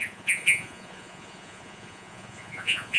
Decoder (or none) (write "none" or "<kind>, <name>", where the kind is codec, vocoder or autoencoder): vocoder, Vocos